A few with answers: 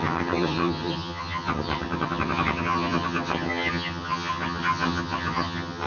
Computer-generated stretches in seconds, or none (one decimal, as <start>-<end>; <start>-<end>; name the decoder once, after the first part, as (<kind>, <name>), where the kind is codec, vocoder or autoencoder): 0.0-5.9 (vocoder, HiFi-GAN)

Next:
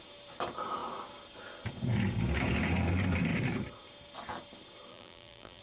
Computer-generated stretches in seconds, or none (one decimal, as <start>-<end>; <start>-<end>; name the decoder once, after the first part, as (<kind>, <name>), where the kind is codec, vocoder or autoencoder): 4.9-5.6 (vocoder, BigVGAN v2)

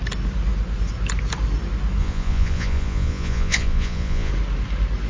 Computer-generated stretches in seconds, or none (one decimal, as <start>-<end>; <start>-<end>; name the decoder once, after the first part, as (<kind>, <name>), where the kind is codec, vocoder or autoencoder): 2.0-4.3 (vocoder, Vocos)

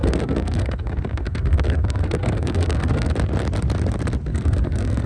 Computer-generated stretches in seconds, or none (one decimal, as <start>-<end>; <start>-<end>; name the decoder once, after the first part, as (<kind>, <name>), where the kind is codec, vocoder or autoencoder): 0.0-3.1 (codec, SNAC); 4.3-5.1